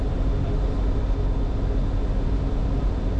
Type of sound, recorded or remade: recorded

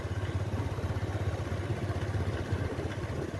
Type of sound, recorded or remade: recorded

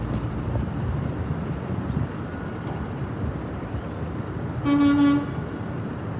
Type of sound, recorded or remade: recorded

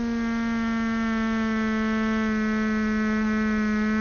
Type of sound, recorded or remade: recorded